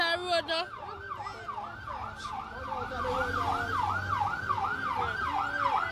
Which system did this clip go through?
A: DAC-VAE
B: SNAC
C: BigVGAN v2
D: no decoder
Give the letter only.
D